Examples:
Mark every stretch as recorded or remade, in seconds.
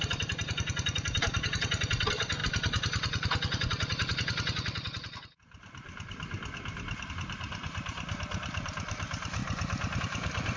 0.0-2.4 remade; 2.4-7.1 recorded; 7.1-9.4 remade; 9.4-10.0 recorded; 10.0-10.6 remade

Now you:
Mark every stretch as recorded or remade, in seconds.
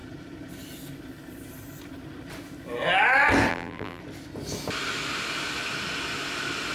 0.0-3.5 recorded; 3.5-4.0 remade; 4.0-6.7 recorded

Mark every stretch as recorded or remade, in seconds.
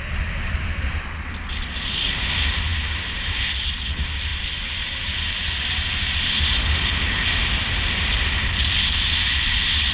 0.0-2.7 recorded; 2.7-3.5 remade; 3.5-4.3 recorded; 4.3-6.8 remade; 6.8-9.9 recorded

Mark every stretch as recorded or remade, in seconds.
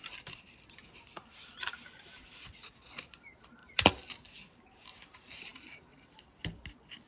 0.0-3.0 remade; 3.0-3.6 recorded; 3.6-4.3 remade; 4.3-7.1 recorded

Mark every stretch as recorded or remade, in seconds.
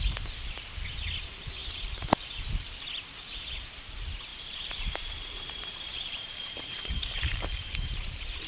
0.0-1.6 recorded; 1.6-2.5 remade; 2.5-4.3 recorded; 4.3-8.5 remade